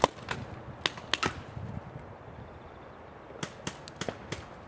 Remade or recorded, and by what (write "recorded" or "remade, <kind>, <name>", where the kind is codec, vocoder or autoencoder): recorded